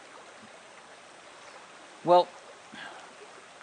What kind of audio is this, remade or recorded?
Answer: recorded